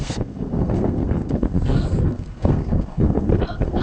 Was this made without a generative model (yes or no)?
no